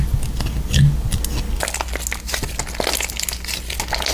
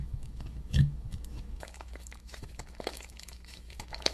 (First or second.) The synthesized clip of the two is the second